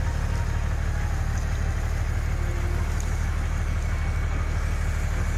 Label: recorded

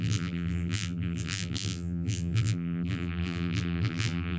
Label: remade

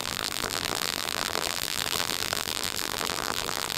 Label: remade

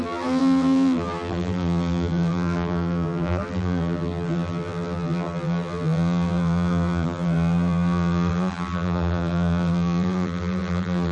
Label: remade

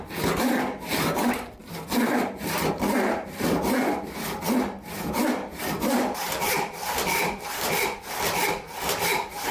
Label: remade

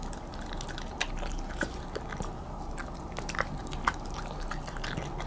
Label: recorded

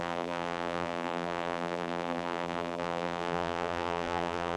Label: remade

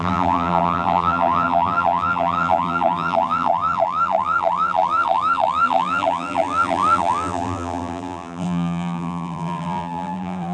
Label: remade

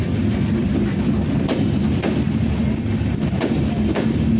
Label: recorded